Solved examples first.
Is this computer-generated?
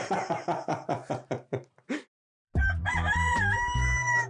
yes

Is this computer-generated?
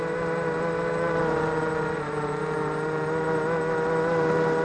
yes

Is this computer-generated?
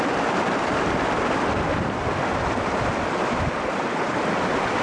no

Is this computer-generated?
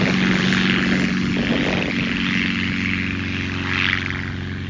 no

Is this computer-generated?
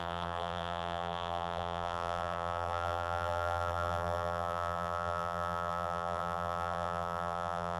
yes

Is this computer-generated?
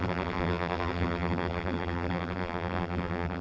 yes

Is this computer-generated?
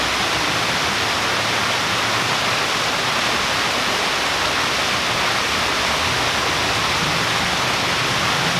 no